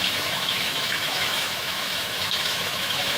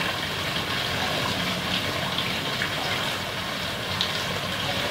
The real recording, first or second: second